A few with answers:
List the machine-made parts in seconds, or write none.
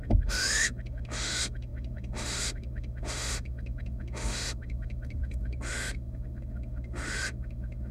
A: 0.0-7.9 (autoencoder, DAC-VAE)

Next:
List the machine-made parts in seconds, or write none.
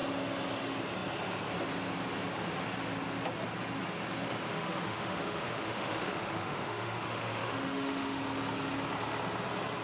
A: 4.5-8.2 (autoencoder, DAC-VAE)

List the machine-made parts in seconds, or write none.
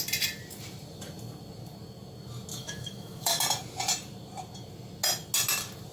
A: 2.5-3.4 (autoencoder, DAC-VAE)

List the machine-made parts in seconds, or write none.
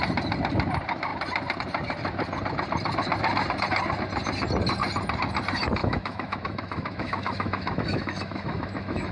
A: 5.8-9.1 (autoencoder, DAC-VAE)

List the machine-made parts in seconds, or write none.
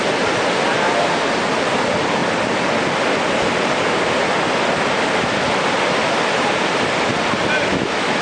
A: 7.7-8.2 (autoencoder, DAC-VAE)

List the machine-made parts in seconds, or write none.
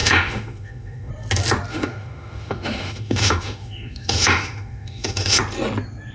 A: 0.0-1.1 (autoencoder, DAC-VAE); 1.7-5.4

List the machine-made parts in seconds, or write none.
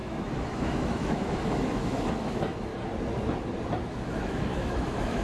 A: 0.0-2.7 (autoencoder, DAC-VAE); 3.9-5.2